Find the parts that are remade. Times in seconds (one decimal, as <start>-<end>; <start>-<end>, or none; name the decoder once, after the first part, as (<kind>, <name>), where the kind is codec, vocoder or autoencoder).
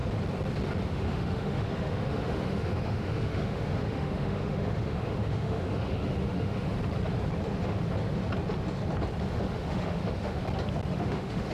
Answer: 0.9-6.7 (autoencoder, DAC-VAE); 9.3-10.4; 10.9-11.5